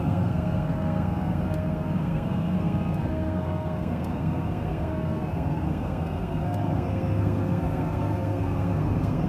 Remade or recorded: remade